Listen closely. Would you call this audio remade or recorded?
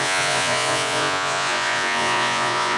remade